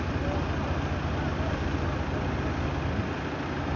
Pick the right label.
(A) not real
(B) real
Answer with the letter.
B